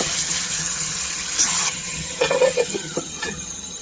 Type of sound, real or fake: fake